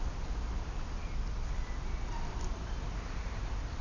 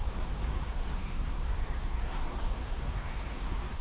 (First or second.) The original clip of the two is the first